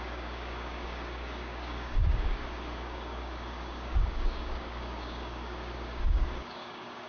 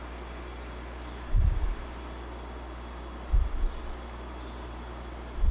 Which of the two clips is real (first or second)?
second